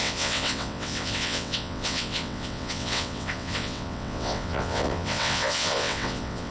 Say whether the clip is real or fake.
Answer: fake